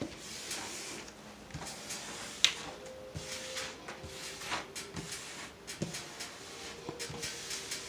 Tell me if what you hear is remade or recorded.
recorded